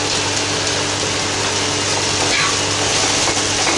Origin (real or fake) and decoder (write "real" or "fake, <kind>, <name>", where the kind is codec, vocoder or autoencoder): real